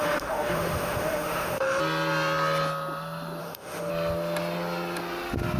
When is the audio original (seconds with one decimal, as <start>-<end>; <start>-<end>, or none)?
1.8-3.4; 3.9-5.6